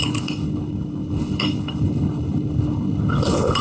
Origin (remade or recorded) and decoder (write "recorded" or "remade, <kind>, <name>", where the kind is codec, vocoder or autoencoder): remade, codec, HILCodec